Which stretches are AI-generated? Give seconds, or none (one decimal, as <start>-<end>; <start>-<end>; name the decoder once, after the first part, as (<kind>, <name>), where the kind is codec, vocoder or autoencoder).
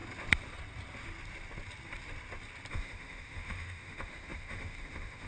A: 2.7-5.3 (autoencoder, DAC-VAE)